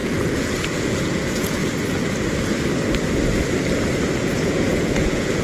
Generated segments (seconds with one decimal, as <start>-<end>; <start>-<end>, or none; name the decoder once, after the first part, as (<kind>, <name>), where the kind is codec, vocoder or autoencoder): 0.0-1.6 (vocoder, Vocos); 4.2-5.4